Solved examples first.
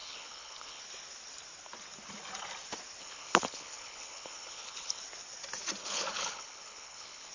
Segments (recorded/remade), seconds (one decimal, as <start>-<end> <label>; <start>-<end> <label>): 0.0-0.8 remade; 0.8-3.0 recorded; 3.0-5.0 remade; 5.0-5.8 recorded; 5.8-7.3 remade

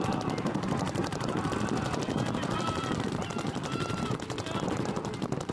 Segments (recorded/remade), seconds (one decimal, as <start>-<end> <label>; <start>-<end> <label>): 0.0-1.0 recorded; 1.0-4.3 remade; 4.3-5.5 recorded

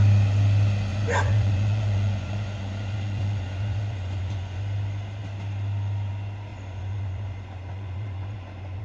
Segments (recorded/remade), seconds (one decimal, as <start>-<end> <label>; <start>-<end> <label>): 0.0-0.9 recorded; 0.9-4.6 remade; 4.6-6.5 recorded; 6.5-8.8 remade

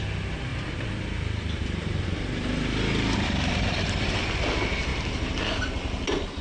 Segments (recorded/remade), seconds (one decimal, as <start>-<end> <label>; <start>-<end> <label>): 0.0-0.5 recorded; 0.5-4.3 remade; 4.3-4.9 recorded; 4.9-5.4 remade; 5.4-6.4 recorded